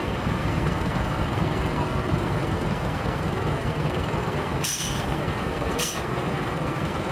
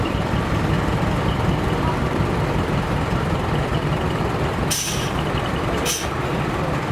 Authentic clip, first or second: second